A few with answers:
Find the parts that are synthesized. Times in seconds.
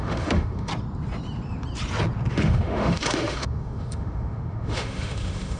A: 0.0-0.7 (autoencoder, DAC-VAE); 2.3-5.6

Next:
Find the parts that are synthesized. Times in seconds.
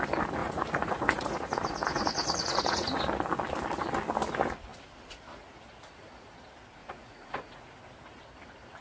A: 0.4-3.0 (vocoder, Vocos); 6.8-7.7